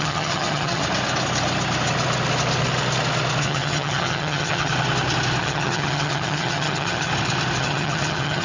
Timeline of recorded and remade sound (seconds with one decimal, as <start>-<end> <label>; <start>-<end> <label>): 0.0-0.8 remade; 0.8-3.4 recorded; 3.4-4.7 remade; 4.7-5.4 recorded; 5.4-7.1 remade; 7.1-7.6 recorded; 7.6-8.4 remade